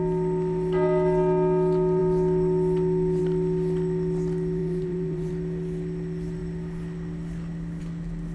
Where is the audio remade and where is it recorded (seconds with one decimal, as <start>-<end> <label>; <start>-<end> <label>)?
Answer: 0.0-4.6 recorded; 4.6-5.3 remade; 5.3-8.3 recorded